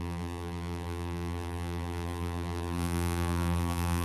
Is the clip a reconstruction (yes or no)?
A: yes